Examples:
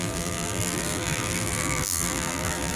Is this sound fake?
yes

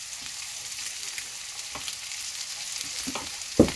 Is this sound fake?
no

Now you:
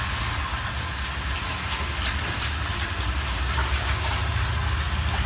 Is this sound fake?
no